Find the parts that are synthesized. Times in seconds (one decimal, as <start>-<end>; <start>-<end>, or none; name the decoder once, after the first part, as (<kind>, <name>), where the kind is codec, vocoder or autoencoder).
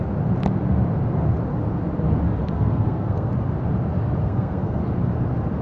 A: 2.4-3.3 (codec, SNAC); 4.2-4.8